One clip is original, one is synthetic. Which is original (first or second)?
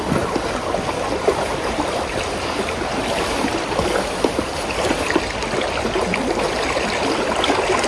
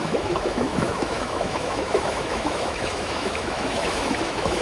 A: first